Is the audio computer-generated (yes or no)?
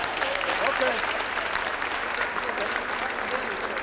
no